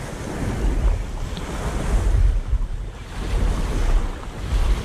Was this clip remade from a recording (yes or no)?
no